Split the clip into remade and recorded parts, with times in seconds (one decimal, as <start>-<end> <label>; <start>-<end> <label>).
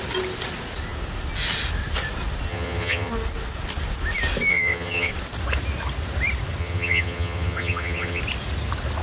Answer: 0.0-2.5 recorded; 2.5-3.1 remade; 3.1-4.5 recorded; 4.5-5.1 remade; 5.1-6.6 recorded; 6.6-8.2 remade; 8.2-9.0 recorded